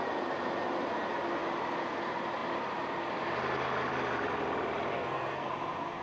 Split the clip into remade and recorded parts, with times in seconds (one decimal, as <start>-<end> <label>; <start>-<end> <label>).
0.0-4.9 recorded; 4.9-5.5 remade; 5.5-6.0 recorded

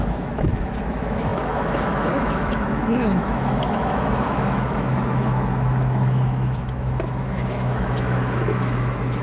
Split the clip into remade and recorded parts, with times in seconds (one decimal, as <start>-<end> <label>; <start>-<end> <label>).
0.0-9.2 remade

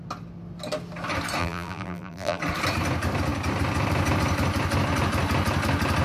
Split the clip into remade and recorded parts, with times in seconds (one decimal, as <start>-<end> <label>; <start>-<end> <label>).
0.0-1.4 recorded; 1.4-2.4 remade; 2.4-6.0 recorded

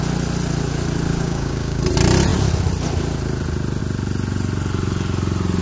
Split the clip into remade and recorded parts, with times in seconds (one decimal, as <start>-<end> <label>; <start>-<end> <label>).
0.0-1.1 recorded; 1.1-1.8 remade; 1.8-5.6 recorded

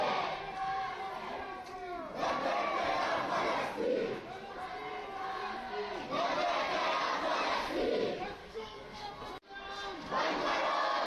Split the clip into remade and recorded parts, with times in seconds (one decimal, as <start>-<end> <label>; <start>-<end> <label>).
0.0-8.4 recorded; 8.4-9.1 remade; 9.1-11.1 recorded